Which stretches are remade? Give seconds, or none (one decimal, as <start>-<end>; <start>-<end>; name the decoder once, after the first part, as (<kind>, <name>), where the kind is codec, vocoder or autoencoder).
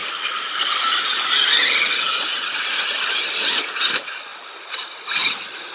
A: 0.0-1.8 (vocoder, BigVGAN v2); 4.3-5.0